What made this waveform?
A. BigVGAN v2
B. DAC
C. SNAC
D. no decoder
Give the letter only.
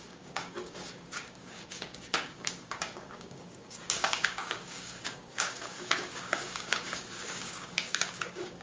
B